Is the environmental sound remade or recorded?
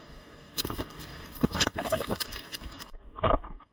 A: remade